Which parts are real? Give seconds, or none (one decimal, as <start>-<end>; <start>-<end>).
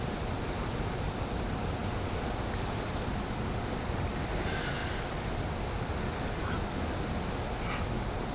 0.0-8.3